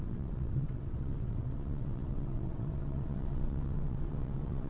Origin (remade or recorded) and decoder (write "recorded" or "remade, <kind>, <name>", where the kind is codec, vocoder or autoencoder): remade, vocoder, WaveNeXt